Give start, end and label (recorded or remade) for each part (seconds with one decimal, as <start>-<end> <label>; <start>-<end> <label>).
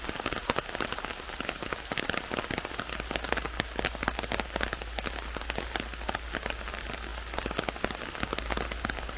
0.0-9.2 recorded